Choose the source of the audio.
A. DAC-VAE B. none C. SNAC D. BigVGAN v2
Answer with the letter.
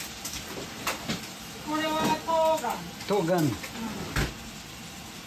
B